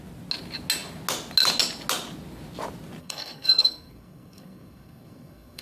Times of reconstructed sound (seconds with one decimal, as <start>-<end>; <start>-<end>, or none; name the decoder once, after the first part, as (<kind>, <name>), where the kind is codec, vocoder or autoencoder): 3.0-5.6 (codec, SNAC)

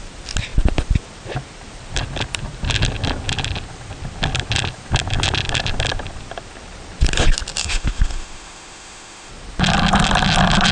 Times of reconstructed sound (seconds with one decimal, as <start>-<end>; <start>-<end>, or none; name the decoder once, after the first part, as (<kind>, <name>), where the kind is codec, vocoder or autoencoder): 7.6-9.3 (autoencoder, DAC-VAE)

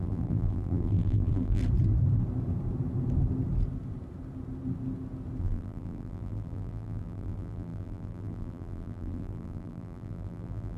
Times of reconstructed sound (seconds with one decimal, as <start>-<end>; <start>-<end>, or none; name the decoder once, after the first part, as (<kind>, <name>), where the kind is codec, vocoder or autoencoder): 0.0-1.6 (vocoder, BigVGAN v2); 5.4-10.8

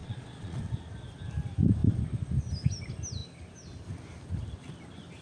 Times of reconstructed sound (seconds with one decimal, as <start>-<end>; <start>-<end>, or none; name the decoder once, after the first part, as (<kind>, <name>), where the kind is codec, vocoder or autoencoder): 0.0-0.6 (vocoder, Vocos)

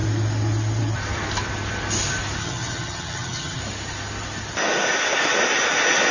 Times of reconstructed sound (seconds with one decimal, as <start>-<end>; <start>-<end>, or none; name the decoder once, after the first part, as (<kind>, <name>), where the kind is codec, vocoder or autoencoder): 2.4-3.6 (vocoder, HiFi-GAN)

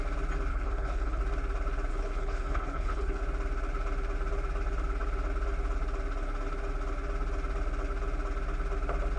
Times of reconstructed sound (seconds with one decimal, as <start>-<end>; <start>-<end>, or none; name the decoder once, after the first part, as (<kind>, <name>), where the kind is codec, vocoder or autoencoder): 0.5-1.2 (codec, HILCodec); 1.9-3.2

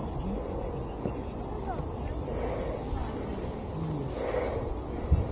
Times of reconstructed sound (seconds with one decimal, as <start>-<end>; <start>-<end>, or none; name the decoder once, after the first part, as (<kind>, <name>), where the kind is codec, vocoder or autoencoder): 0.0-1.4 (vocoder, Vocos)